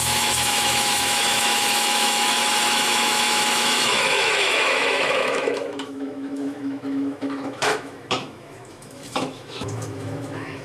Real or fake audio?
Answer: fake